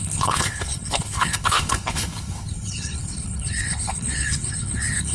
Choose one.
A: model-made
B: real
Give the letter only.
A